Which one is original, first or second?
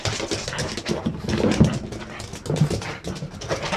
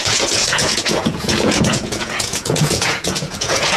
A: first